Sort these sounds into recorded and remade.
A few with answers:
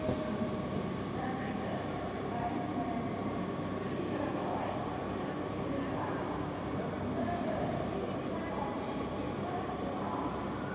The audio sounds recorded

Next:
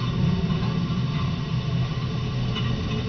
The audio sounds recorded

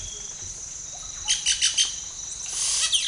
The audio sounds recorded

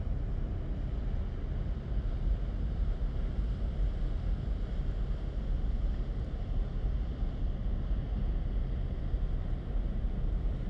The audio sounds recorded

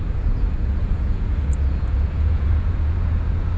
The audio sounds remade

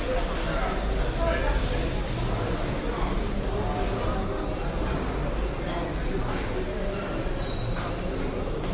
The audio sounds recorded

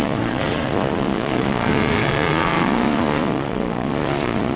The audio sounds remade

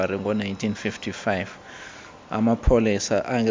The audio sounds recorded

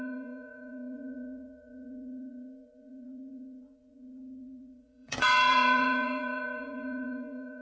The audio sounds remade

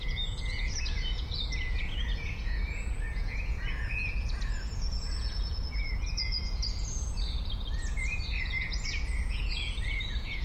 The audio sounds remade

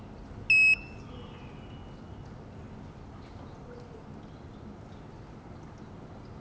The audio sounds recorded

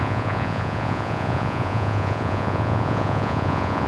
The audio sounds remade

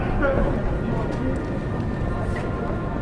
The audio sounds recorded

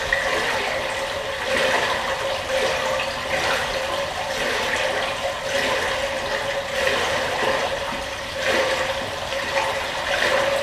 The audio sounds recorded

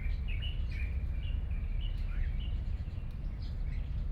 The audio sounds recorded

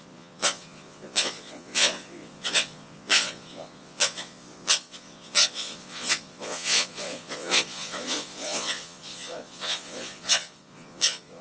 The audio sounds remade